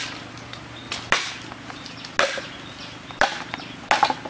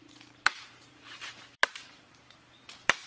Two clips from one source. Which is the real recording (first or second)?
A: first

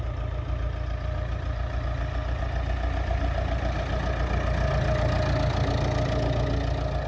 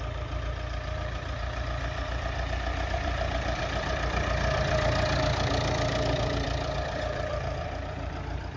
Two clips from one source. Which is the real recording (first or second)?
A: first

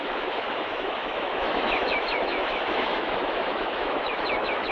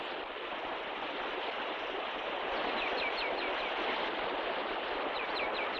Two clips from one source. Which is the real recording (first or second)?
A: second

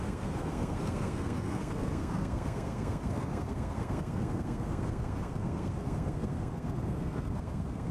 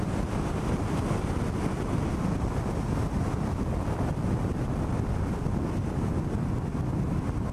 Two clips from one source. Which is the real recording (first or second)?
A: second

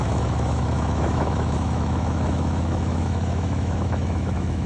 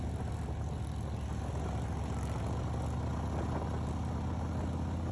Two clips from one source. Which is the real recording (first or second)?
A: second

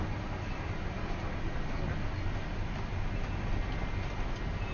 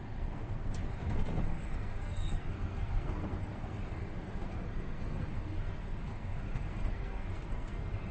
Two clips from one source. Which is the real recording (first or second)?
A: first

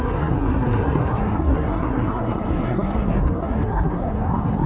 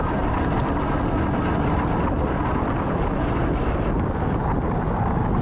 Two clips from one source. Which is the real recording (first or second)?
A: second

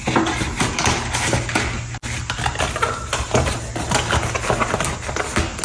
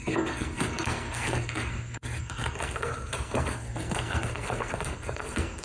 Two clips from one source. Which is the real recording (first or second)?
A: first